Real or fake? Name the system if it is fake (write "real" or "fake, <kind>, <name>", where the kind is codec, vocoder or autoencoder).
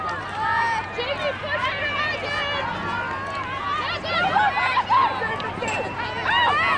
real